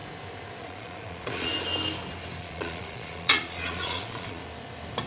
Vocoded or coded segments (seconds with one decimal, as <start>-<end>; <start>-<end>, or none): 0.6-1.5; 2.4-4.4